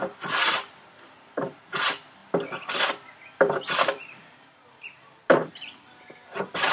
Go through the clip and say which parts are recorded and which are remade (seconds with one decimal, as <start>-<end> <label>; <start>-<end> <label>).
0.0-2.2 remade; 2.2-2.8 recorded; 2.8-6.7 remade